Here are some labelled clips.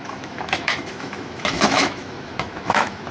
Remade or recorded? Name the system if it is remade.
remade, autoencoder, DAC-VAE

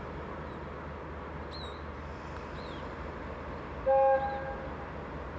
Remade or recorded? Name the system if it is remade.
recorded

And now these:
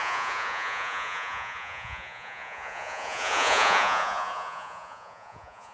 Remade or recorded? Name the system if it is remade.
remade, vocoder, Vocos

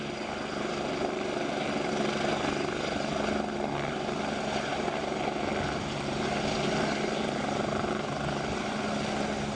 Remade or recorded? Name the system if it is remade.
recorded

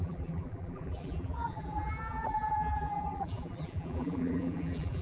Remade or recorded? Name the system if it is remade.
remade, vocoder, BigVGAN v2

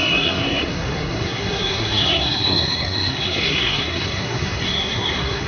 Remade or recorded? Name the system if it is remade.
remade, codec, SNAC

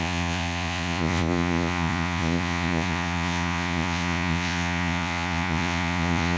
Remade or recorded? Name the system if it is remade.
remade, vocoder, Vocos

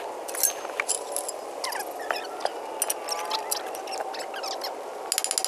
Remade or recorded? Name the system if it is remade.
recorded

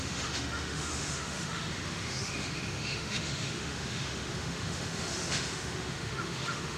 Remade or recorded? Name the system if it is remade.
remade, autoencoder, DAC-VAE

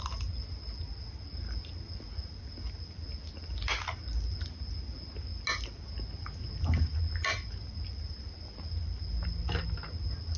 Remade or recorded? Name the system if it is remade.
recorded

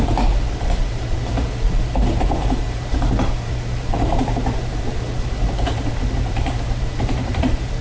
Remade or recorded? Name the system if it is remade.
remade, vocoder, BigVGAN v2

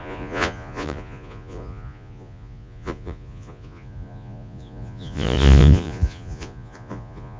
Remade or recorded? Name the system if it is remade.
remade, vocoder, Vocos